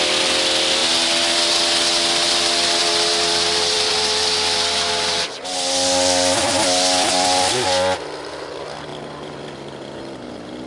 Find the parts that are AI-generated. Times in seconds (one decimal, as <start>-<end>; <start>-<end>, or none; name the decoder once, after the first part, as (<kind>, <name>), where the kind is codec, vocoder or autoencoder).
0.0-0.8 (vocoder, BigVGAN v2); 2.3-2.8; 3.9-8.9; 10.0-10.7